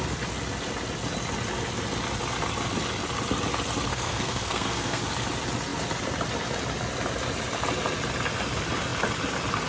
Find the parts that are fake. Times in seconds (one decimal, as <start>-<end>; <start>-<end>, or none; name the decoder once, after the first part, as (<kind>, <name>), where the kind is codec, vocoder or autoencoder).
3.9-5.0 (codec, SNAC)